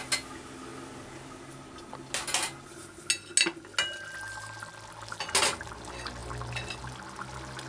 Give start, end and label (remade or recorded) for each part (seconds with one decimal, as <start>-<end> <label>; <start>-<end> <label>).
0.0-7.7 recorded